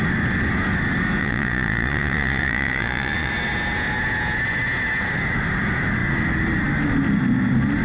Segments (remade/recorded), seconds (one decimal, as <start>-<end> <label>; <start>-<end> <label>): 0.0-1.2 recorded; 1.2-3.3 remade; 3.3-7.8 recorded

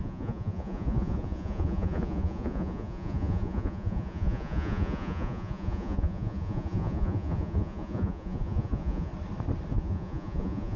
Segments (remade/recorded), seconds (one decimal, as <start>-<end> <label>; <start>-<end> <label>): 0.0-9.1 remade; 9.1-9.7 recorded; 9.7-10.8 remade

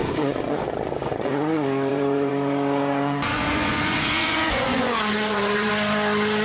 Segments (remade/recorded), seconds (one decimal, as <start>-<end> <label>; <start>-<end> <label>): 0.0-1.3 remade; 1.3-1.9 recorded; 1.9-5.7 remade; 5.7-6.4 recorded